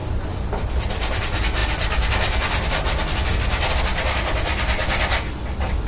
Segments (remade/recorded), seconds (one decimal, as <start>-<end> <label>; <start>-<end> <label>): 0.0-5.9 recorded